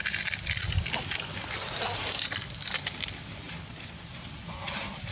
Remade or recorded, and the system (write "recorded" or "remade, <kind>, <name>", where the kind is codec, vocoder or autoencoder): recorded